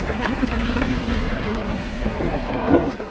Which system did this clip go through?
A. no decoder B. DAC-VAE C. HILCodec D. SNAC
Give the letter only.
D